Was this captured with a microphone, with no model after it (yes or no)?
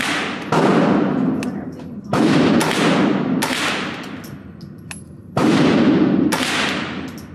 yes